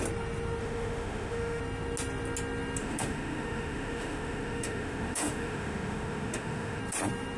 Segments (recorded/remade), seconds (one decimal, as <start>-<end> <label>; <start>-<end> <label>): 0.0-0.6 recorded; 0.6-1.6 remade; 1.6-2.8 recorded; 2.8-6.8 remade; 6.8-7.4 recorded